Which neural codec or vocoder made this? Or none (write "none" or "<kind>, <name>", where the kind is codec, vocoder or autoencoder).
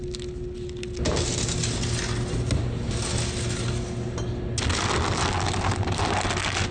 none